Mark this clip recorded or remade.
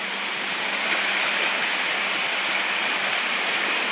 recorded